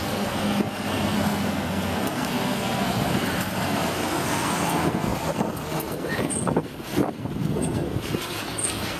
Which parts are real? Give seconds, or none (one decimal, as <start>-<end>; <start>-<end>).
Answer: none